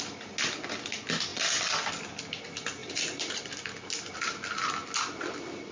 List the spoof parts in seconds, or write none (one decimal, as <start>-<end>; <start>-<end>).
1.3-1.9; 2.8-3.5

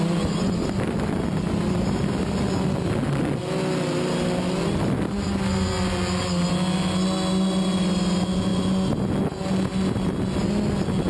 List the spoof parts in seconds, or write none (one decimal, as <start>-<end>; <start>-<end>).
none